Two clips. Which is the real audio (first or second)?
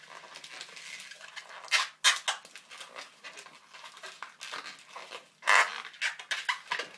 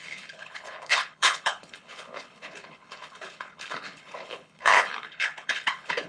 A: first